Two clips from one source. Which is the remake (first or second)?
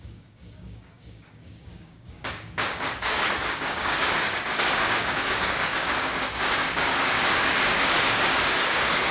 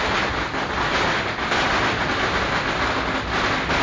first